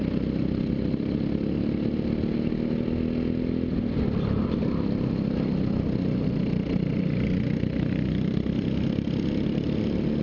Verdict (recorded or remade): recorded